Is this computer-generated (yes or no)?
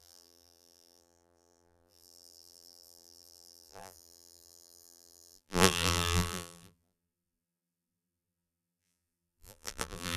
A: yes